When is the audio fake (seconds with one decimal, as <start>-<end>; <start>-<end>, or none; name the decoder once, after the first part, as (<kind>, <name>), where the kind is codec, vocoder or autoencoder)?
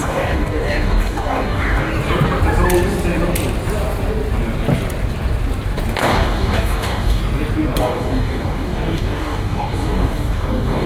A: 0.0-1.9 (codec, DAC); 6.0-7.2; 7.8-10.9